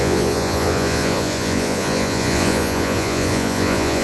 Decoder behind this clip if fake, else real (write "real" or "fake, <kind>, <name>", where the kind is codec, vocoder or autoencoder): fake, vocoder, Vocos